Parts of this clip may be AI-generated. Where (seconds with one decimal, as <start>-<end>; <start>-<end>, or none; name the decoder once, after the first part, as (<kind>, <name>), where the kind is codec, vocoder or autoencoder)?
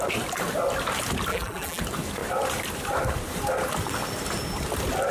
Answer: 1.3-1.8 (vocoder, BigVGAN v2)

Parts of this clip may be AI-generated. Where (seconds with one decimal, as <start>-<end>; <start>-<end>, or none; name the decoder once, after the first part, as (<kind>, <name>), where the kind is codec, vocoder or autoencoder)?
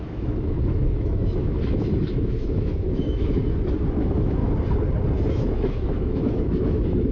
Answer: 0.0-3.4 (autoencoder, DAC-VAE); 4.0-4.4; 5.3-7.1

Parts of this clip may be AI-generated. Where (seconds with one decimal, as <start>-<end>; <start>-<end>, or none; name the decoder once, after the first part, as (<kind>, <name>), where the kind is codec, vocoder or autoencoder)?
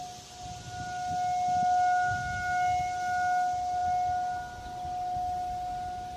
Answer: none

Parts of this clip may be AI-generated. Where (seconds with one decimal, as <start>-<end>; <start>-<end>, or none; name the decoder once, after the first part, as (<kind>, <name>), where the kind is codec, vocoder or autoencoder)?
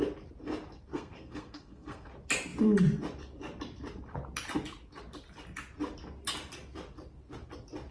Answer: 0.9-2.1 (codec, SNAC)